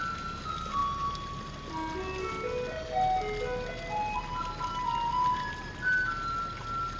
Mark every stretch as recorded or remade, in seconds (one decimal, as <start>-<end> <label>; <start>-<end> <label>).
0.0-7.0 recorded